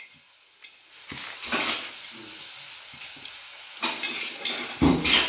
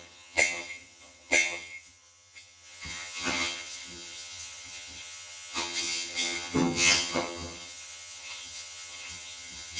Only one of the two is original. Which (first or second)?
first